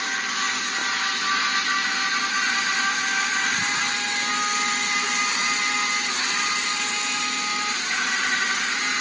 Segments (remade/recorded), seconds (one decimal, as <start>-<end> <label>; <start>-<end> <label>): 0.0-9.0 recorded